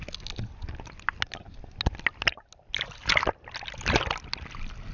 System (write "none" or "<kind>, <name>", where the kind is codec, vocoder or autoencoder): none